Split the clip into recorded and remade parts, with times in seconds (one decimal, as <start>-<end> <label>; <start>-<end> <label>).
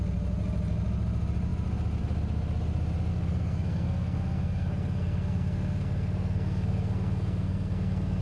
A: 0.0-3.1 recorded; 3.1-8.2 remade